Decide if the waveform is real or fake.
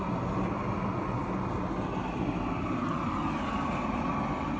real